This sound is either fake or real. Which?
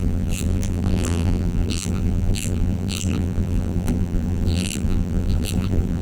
fake